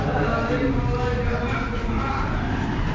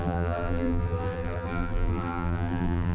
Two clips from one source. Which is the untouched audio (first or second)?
first